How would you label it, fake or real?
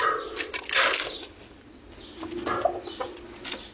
real